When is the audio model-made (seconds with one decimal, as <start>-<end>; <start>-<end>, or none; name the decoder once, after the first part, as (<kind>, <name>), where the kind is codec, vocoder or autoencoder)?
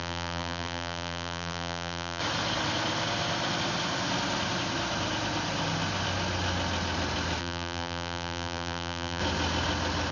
0.0-2.2 (vocoder, BigVGAN v2); 7.4-9.2